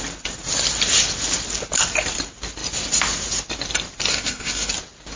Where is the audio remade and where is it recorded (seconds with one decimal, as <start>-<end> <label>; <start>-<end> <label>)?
0.0-4.1 recorded; 4.1-4.7 remade; 4.7-5.2 recorded